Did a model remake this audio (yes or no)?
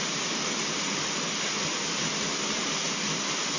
no